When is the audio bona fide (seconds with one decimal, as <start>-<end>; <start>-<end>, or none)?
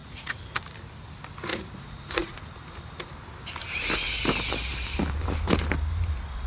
0.6-1.5; 2.5-6.5